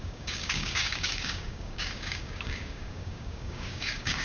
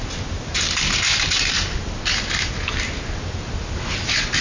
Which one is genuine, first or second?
second